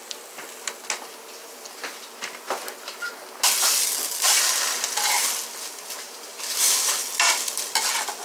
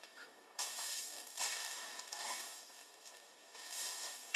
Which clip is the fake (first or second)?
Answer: second